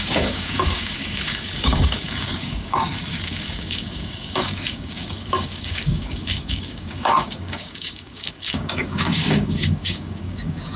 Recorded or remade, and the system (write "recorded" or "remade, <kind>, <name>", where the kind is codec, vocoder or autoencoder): remade, codec, DAC